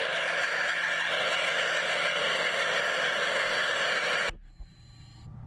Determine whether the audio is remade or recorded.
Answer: recorded